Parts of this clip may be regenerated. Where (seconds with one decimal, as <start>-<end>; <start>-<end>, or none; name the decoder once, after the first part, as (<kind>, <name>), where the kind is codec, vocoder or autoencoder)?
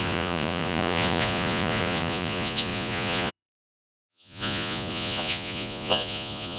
0.0-6.6 (vocoder, Vocos)